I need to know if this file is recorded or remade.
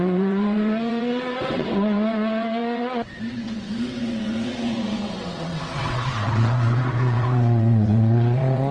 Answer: remade